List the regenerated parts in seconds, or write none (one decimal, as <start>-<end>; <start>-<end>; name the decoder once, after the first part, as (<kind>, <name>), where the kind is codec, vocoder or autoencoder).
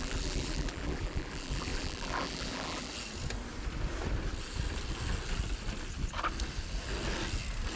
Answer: 0.0-2.9 (vocoder, BigVGAN v2)